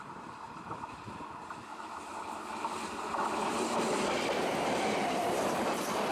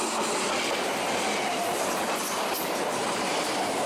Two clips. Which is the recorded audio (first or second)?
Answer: second